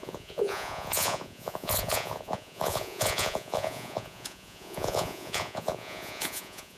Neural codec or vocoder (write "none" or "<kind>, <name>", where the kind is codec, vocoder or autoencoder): vocoder, Vocos